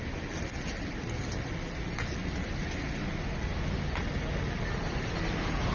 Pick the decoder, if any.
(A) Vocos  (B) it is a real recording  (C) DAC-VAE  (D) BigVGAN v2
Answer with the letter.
B